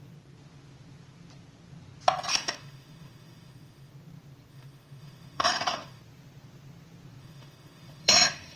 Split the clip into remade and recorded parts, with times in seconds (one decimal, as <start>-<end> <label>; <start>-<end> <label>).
0.0-2.3 recorded; 2.3-3.9 remade; 3.9-4.5 recorded; 4.5-6.0 remade; 6.0-7.2 recorded; 7.2-8.6 remade